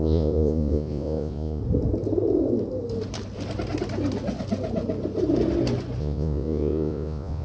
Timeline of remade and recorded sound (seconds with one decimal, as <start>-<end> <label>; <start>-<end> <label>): 0.0-1.6 remade; 1.6-6.0 recorded; 6.0-7.4 remade